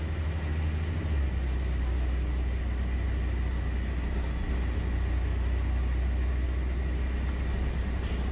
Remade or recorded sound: recorded